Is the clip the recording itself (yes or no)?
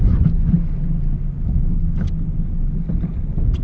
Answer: yes